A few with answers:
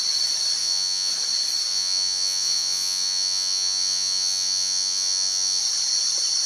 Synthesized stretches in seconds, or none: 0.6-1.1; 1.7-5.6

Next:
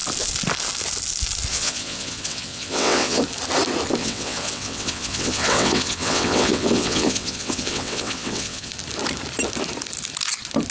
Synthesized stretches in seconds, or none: 1.5-3.2; 4.0-8.7